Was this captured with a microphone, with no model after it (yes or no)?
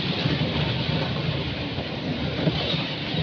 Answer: yes